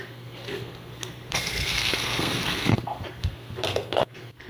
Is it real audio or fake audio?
fake